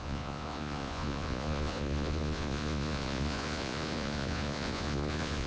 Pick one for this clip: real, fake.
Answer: fake